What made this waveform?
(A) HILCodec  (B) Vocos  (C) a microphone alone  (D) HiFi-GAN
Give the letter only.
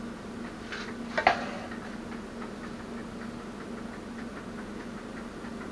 C